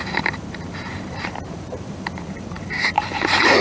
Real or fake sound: fake